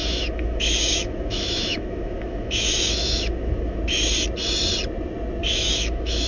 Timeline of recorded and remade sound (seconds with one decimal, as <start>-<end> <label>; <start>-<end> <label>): 0.0-3.8 remade; 3.8-5.4 recorded; 5.4-6.3 remade